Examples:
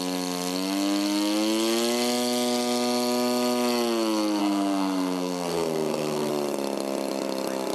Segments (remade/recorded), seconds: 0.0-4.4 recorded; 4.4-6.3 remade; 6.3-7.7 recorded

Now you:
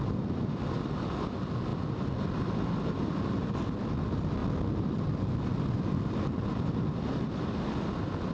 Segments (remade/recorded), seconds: 0.0-8.3 recorded

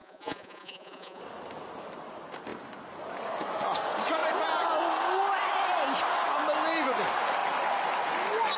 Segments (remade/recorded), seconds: 0.0-1.2 remade; 1.2-8.6 recorded

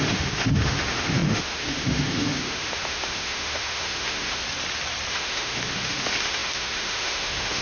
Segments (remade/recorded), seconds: 0.0-4.4 remade; 4.4-5.1 recorded; 5.1-7.6 remade

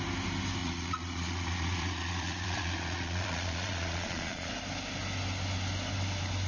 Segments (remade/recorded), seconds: 0.0-0.6 recorded; 0.6-4.5 remade; 4.5-6.5 recorded